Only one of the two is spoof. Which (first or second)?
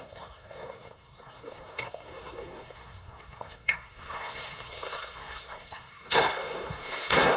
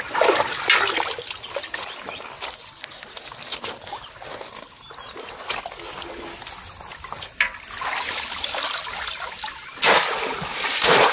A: first